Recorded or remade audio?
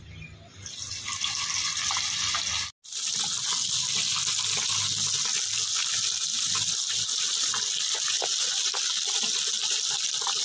recorded